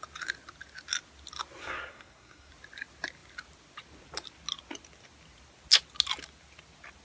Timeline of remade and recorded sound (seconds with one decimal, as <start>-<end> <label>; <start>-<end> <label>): 0.0-1.6 recorded; 1.6-2.5 remade; 2.5-7.0 recorded